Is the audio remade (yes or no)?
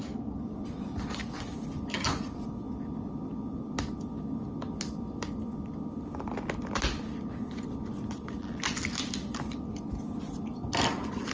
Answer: no